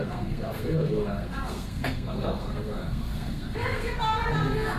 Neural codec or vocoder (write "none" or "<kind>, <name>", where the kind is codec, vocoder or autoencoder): codec, SNAC